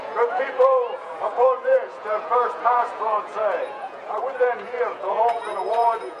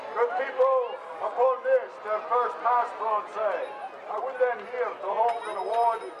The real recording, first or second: second